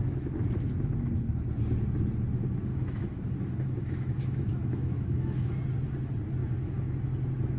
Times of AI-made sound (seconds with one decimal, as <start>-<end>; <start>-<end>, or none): 2.7-3.2; 3.8-5.5; 6.4-6.9